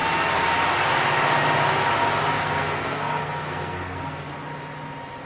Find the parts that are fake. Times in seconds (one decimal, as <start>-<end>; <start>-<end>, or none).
2.4-4.3